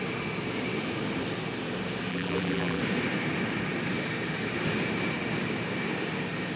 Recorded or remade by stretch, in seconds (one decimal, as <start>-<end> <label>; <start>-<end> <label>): 0.0-2.1 recorded; 2.1-2.8 remade; 2.8-6.6 recorded